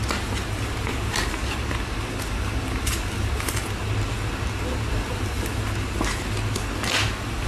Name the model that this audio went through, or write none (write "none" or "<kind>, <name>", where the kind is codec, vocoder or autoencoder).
none